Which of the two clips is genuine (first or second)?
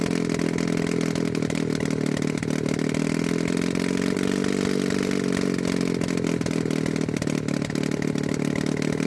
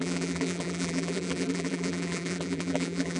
first